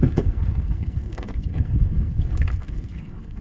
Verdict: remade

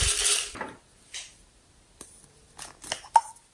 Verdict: recorded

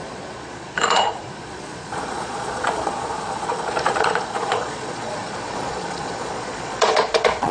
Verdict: remade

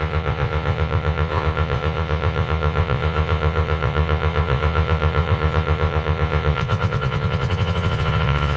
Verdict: remade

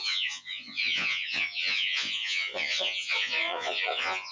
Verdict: remade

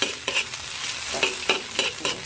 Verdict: recorded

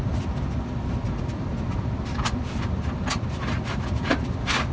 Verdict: recorded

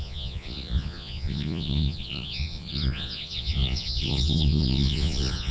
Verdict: remade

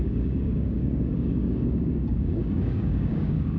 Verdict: remade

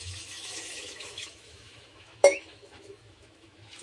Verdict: remade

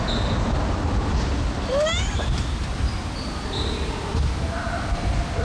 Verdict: recorded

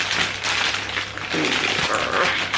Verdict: recorded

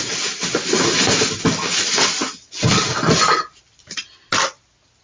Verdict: recorded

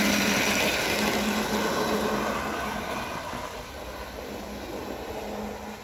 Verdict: recorded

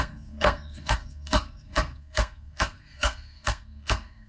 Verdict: remade